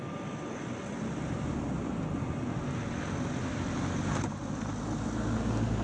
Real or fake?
real